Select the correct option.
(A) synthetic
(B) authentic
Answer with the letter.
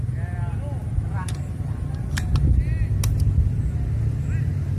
B